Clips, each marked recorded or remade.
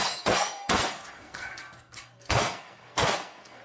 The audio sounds remade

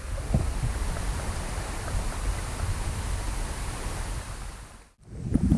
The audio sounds recorded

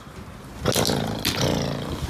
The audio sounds recorded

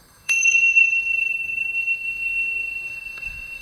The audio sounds remade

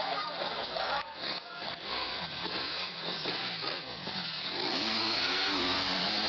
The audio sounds remade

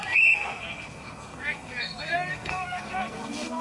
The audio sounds remade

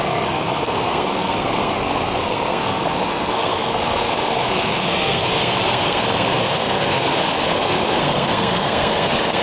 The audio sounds remade